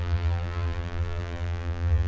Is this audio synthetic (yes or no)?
yes